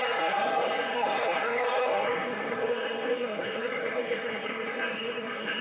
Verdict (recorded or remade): remade